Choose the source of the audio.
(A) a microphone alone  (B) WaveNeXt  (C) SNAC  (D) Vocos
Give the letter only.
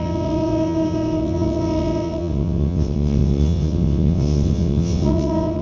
B